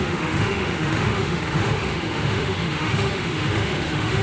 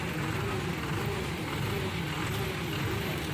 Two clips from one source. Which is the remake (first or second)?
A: first